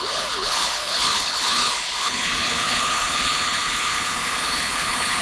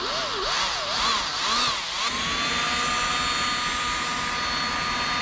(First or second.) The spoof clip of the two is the first